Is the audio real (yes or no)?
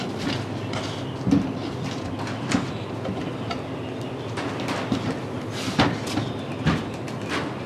yes